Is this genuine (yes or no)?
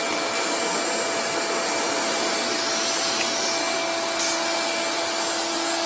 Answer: yes